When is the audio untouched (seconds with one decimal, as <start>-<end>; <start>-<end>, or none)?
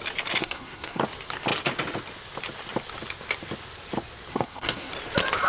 0.0-0.4; 1.0-4.3; 4.9-5.5